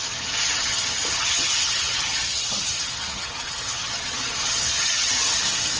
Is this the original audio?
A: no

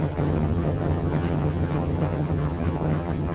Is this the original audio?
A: no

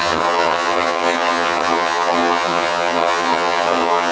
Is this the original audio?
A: no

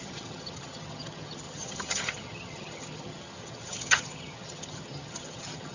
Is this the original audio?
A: no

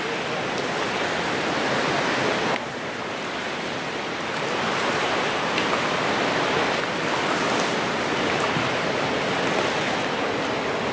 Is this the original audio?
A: yes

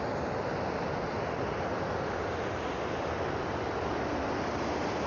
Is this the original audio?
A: yes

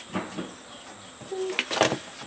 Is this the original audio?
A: yes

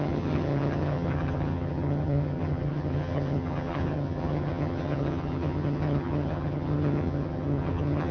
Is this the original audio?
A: no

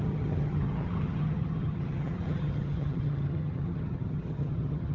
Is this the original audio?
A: no